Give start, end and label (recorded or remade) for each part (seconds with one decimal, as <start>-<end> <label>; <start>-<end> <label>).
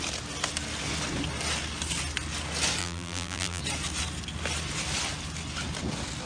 0.0-2.8 recorded; 2.8-3.6 remade; 3.6-6.3 recorded